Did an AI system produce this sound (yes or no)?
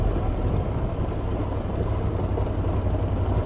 no